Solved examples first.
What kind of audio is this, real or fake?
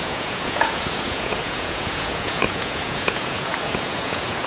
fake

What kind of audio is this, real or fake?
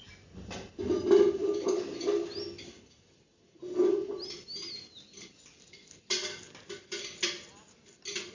real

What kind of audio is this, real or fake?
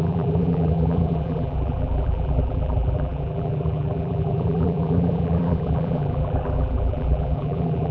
fake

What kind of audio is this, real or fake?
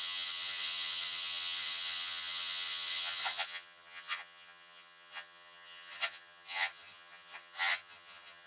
fake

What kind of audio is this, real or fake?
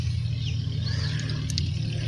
real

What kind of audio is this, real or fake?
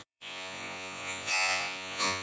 fake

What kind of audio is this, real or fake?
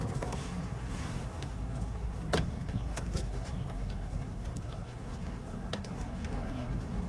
fake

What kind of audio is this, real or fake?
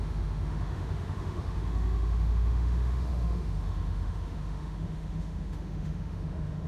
fake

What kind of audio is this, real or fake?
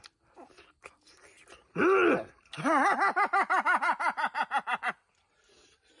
real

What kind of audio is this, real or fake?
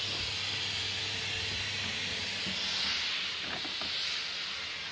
real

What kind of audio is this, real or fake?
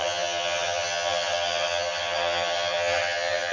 fake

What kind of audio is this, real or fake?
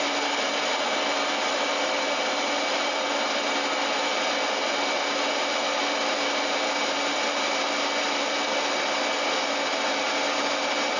real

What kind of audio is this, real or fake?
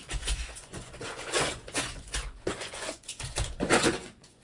fake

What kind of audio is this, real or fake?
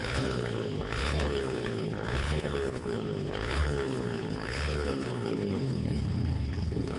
fake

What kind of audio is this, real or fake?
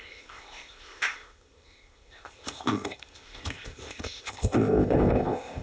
fake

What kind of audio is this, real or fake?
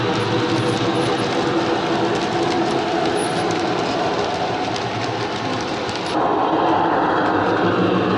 real